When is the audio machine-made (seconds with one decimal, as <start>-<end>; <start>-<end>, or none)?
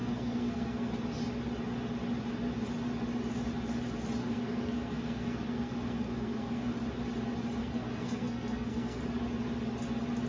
0.0-0.9; 4.2-6.7; 7.6-9.0